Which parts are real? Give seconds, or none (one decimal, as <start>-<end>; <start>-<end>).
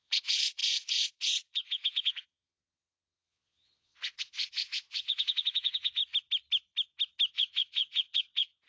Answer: 6.0-7.3